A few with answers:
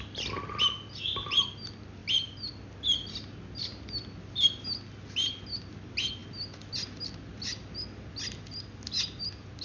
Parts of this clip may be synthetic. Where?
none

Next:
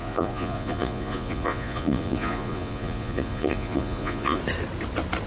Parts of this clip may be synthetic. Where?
0.0-4.4 (vocoder, Vocos)

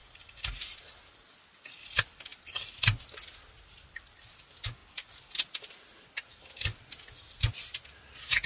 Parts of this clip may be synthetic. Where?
none

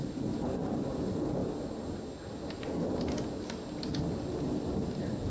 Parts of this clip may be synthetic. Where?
none

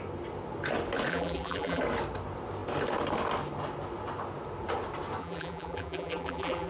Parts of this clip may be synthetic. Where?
1.1-1.8 (vocoder, BigVGAN v2); 5.2-6.7

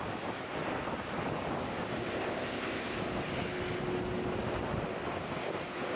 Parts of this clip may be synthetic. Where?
2.1-3.0 (codec, ZipCodec)